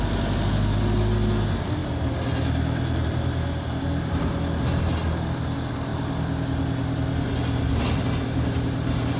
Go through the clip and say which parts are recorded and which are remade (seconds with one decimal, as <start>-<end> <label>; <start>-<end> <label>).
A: 0.0-9.2 recorded

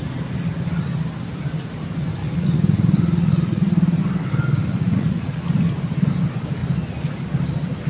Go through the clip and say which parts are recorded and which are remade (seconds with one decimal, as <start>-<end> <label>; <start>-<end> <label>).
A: 0.0-2.2 recorded; 2.2-4.0 remade; 4.0-4.6 recorded; 4.6-5.4 remade; 5.4-7.9 recorded

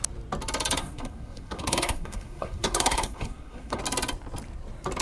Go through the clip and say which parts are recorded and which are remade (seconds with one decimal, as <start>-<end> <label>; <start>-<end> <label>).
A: 0.0-0.8 recorded; 0.8-3.8 remade; 3.8-5.0 recorded

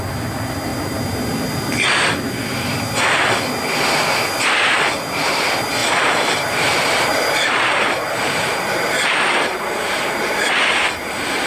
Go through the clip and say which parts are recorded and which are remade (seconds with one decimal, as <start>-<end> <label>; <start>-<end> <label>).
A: 0.0-5.8 recorded; 5.8-10.6 remade; 10.6-11.5 recorded

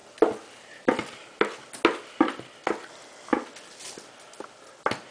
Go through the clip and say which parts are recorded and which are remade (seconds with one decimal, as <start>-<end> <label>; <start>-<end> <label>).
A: 0.0-5.1 recorded

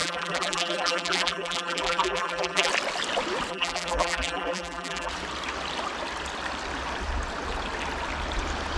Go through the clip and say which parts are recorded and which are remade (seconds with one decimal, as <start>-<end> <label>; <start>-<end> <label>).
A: 0.0-2.7 remade; 2.7-3.5 recorded; 3.5-5.1 remade; 5.1-8.8 recorded